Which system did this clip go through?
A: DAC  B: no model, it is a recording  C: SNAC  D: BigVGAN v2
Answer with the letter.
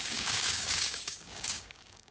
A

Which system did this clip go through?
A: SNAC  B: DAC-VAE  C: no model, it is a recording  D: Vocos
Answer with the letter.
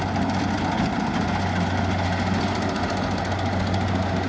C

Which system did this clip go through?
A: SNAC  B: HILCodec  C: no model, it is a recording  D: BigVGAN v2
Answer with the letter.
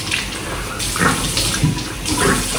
C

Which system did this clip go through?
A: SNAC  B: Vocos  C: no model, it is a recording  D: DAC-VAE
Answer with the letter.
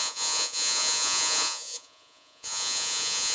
B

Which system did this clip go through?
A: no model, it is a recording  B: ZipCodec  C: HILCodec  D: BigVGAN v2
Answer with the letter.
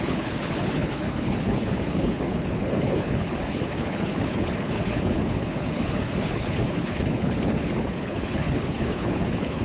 C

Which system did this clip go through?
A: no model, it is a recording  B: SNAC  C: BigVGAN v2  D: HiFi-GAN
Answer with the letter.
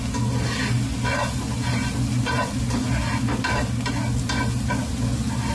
A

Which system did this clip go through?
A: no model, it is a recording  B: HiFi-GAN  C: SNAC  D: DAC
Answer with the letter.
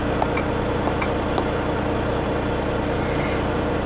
A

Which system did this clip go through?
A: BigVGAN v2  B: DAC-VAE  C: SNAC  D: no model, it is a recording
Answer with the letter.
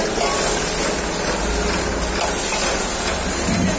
D